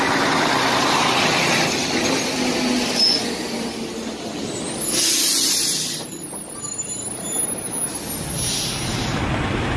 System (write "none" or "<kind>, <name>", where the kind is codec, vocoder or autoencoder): none